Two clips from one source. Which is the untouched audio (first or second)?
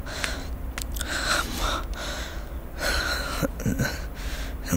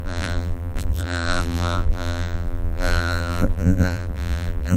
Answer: first